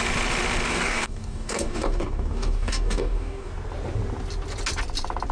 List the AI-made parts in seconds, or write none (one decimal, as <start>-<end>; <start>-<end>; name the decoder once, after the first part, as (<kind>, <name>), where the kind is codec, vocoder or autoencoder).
0.7-3.5 (codec, DAC)